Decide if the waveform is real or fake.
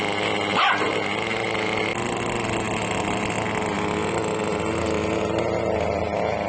real